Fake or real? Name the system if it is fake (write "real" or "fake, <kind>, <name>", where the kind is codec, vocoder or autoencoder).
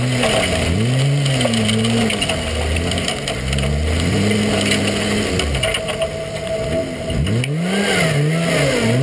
real